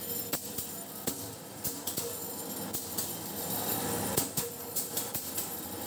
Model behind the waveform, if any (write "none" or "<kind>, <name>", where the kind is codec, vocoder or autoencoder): none